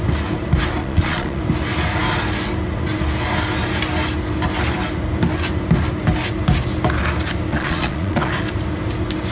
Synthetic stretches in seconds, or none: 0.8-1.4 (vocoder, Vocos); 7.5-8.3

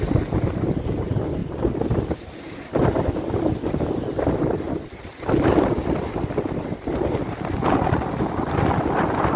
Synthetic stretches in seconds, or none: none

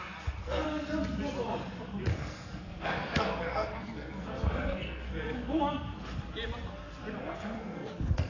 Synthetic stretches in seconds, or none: 0.4-0.9 (codec, SNAC); 2.1-5.6; 7.2-8.3

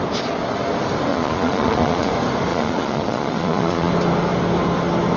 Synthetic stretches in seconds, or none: 1.1-2.1 (vocoder, Vocos); 2.5-3.9

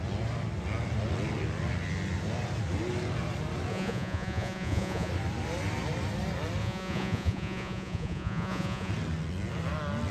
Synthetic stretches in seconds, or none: 3.7-5.1 (vocoder, Vocos); 6.6-8.9